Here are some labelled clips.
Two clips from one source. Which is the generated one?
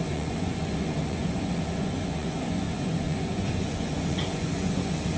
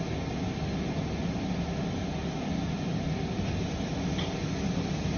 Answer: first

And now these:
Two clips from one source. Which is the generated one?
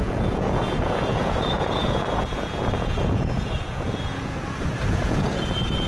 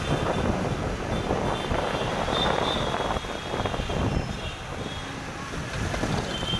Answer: first